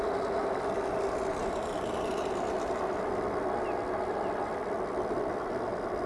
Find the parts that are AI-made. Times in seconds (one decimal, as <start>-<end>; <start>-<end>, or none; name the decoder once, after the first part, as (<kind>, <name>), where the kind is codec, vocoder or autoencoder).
0.4-3.1 (vocoder, BigVGAN v2)